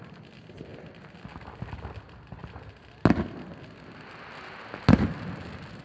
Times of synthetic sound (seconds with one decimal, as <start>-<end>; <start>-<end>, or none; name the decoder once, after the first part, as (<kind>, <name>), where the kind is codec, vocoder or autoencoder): none